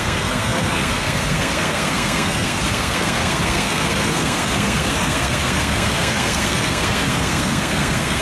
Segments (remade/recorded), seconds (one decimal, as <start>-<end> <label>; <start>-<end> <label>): 0.0-8.2 remade